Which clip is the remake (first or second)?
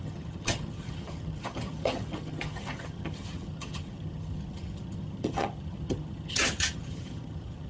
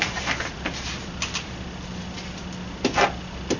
first